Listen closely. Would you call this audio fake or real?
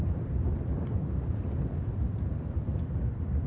real